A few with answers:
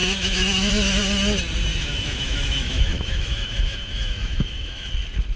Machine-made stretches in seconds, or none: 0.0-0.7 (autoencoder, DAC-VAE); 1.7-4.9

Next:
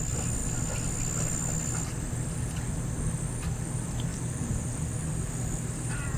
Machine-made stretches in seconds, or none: 4.1-4.7 (vocoder, BigVGAN v2)

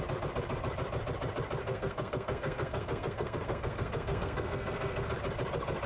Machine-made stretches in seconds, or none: 1.6-5.1 (codec, SNAC)

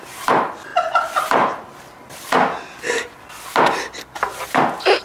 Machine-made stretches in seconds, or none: none

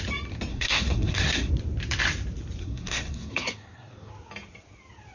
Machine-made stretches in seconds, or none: 0.5-1.5 (codec, SNAC); 2.6-4.1